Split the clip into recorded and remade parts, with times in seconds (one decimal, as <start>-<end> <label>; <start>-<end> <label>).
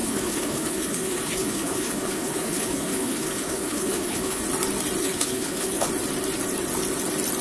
0.0-4.4 remade; 4.4-5.0 recorded; 5.0-5.9 remade; 5.9-7.4 recorded